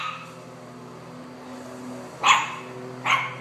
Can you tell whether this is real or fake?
real